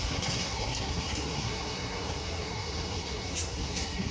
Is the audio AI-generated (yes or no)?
yes